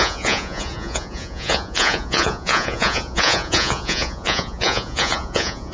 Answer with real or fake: fake